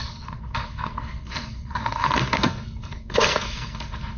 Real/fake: fake